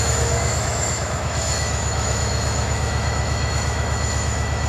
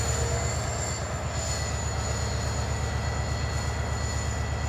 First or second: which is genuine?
second